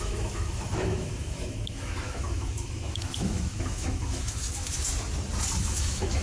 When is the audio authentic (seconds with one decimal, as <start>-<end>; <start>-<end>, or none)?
4.9-5.6